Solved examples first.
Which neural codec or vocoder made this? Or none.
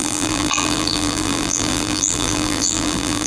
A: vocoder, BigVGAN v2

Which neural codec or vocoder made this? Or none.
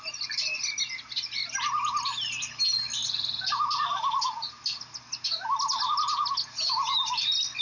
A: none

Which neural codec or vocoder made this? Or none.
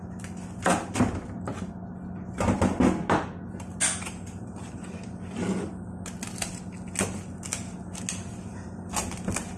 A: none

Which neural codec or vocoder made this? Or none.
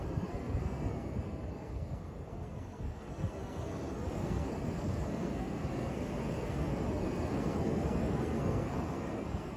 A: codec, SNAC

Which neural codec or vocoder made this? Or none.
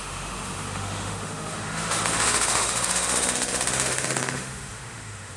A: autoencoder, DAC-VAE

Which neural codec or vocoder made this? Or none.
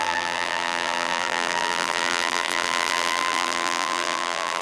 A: vocoder, BigVGAN v2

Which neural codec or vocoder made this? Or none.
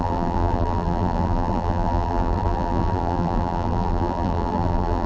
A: vocoder, BigVGAN v2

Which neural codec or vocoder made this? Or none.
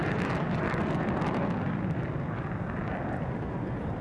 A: vocoder, BigVGAN v2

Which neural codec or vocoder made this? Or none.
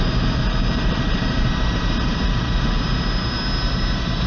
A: none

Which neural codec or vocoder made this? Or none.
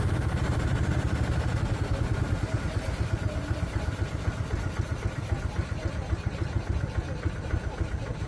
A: none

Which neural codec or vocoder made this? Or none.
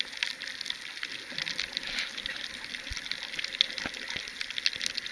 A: none